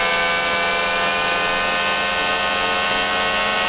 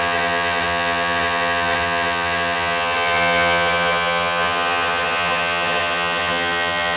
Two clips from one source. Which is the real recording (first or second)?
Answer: first